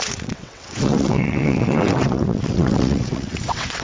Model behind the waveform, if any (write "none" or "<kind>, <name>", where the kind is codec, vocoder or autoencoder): vocoder, WaveNeXt